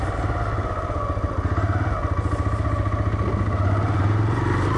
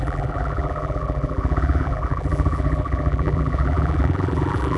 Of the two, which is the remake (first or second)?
second